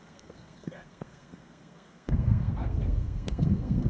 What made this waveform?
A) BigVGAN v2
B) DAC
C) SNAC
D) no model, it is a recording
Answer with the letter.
C